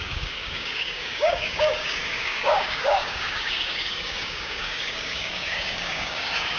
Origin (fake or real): fake